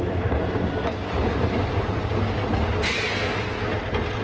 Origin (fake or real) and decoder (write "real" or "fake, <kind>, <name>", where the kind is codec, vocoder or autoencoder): real